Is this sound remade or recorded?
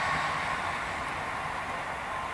recorded